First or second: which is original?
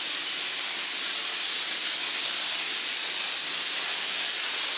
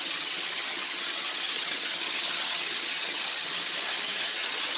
first